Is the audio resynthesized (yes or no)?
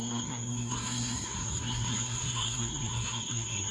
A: yes